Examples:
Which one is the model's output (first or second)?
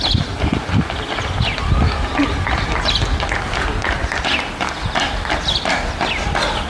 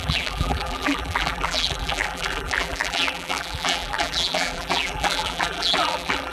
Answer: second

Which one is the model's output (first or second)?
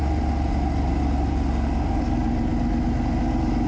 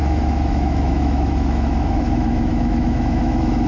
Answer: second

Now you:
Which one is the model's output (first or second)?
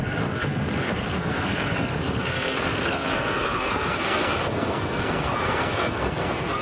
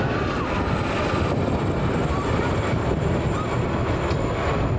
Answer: first